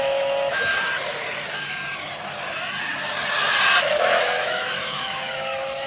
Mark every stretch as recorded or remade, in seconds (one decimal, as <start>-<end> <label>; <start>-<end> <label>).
0.0-0.7 remade; 0.7-4.2 recorded; 4.2-5.9 remade